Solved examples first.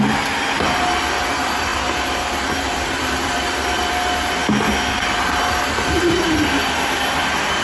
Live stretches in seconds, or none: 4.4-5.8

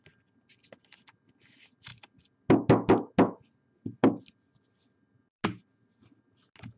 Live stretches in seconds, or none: 0.0-6.8

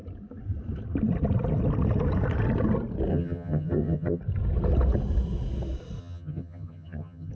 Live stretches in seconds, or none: 0.0-3.1; 4.2-6.0

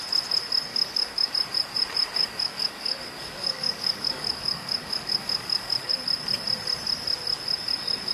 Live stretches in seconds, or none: 0.0-0.7; 1.3-2.2; 5.9-8.1

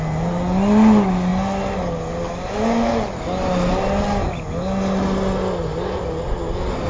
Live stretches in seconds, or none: 0.0-6.9